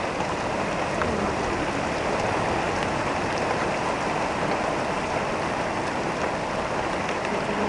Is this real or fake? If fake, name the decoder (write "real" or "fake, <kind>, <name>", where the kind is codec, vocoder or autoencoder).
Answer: real